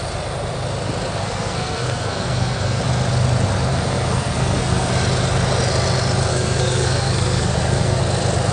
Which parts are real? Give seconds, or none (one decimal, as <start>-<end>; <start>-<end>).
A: 0.0-1.2; 2.8-3.7; 4.9-6.3; 8.0-8.5

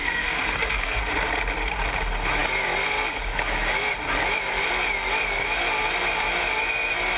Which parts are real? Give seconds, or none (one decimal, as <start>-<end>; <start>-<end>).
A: 1.0-7.2